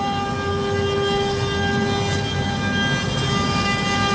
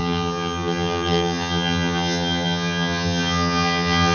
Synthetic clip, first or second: second